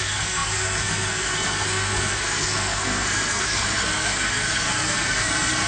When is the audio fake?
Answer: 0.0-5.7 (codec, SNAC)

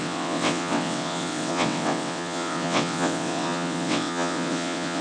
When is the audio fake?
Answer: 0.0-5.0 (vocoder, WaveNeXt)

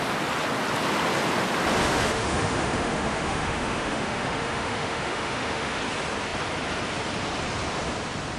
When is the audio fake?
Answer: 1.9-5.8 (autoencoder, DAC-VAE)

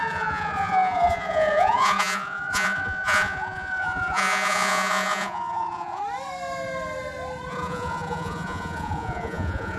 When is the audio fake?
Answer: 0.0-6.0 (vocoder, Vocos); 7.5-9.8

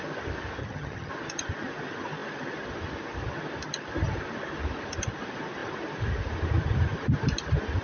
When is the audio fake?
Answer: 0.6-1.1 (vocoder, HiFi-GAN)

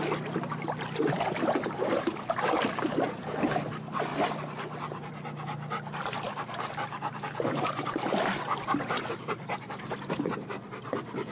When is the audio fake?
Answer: none

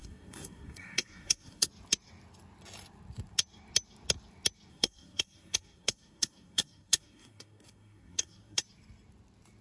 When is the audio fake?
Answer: 0.0-1.7 (codec, SNAC); 4.7-8.6

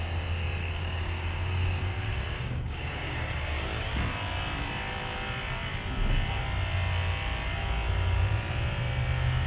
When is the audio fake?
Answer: 0.6-3.9 (codec, DAC)